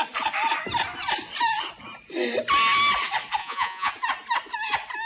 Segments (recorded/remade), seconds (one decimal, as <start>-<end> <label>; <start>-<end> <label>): 0.0-3.4 recorded; 3.4-3.9 remade; 3.9-5.1 recorded